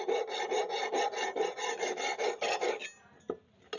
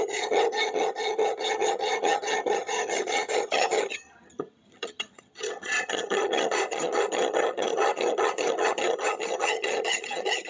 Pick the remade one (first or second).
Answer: second